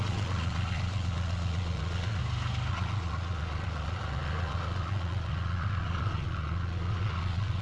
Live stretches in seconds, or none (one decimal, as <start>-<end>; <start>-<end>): 2.2-2.7